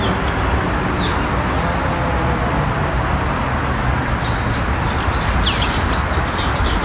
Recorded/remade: recorded